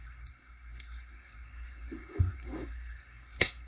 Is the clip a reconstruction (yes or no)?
yes